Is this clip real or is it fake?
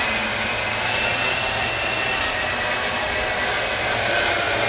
real